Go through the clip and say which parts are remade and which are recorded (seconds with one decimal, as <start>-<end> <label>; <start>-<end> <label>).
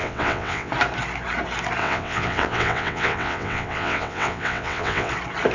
0.0-0.7 remade; 0.7-1.8 recorded; 1.8-5.1 remade; 5.1-5.5 recorded